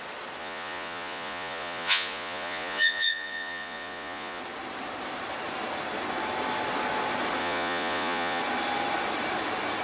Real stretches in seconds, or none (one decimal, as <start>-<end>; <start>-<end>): 0.0-0.4; 4.4-7.4; 8.4-9.8